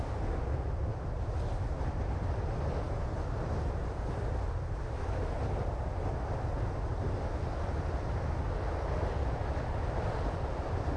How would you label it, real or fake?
real